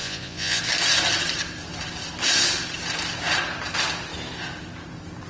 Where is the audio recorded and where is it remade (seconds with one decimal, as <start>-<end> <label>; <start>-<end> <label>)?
0.0-0.6 remade; 0.6-5.3 recorded